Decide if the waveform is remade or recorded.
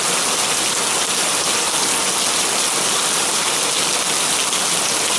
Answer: recorded